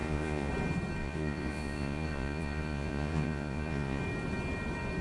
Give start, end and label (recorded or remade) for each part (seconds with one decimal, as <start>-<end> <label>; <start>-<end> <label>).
0.0-0.5 remade; 0.5-1.0 recorded; 1.0-4.0 remade; 4.0-5.0 recorded